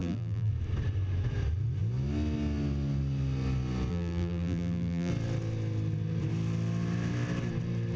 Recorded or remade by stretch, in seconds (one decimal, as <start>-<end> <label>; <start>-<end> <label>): 0.0-0.5 remade; 0.5-3.9 recorded; 3.9-5.1 remade; 5.1-8.0 recorded